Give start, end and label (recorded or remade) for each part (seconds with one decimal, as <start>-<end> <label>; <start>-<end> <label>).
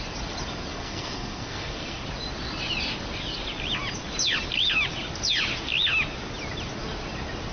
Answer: 0.0-0.7 recorded; 0.7-2.0 remade; 2.0-7.5 recorded